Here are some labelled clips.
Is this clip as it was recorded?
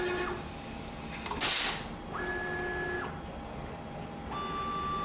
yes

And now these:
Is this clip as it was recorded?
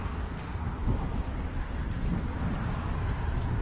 yes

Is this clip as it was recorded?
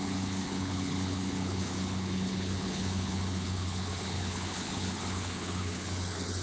no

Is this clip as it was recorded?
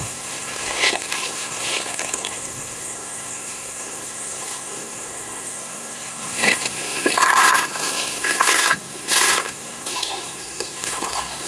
no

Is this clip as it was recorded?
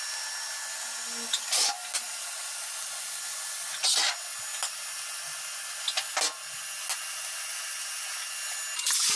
yes